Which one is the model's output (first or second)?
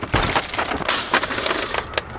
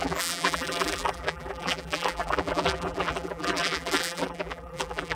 second